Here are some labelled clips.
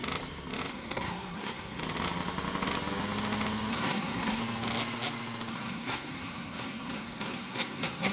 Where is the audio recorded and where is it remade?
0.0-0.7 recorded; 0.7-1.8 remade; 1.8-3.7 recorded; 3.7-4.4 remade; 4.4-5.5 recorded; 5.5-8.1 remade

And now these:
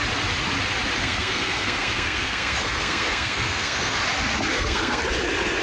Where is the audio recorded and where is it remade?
0.0-1.0 recorded; 1.0-4.0 remade; 4.0-4.5 recorded; 4.5-5.0 remade; 5.0-5.6 recorded

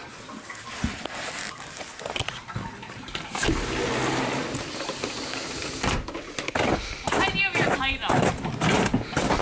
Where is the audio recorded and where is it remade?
0.0-9.4 recorded

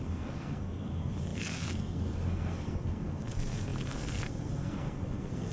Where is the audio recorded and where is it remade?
0.0-5.5 remade

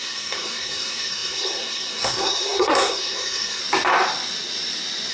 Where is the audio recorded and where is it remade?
0.0-3.6 remade; 3.6-5.1 recorded

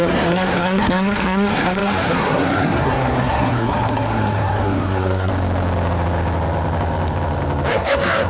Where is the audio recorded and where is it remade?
0.0-5.3 remade; 5.3-7.7 recorded; 7.7-8.3 remade